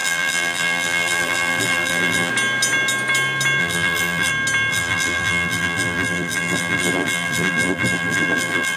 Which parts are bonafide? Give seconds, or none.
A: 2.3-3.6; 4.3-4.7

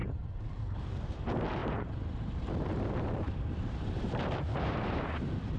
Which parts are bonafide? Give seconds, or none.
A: none

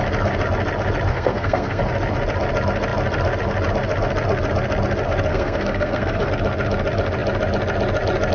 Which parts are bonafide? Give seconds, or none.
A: 0.0-1.1; 1.8-5.3; 6.3-8.3

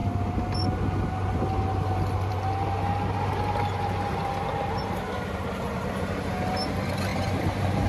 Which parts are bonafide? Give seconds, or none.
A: 0.0-7.1

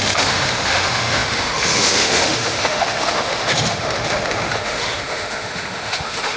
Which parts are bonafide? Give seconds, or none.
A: none